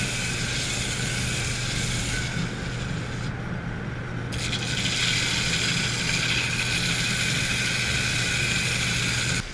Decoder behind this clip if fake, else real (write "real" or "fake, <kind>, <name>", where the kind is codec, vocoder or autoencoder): real